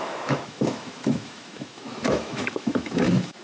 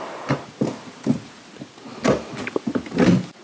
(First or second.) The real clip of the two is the second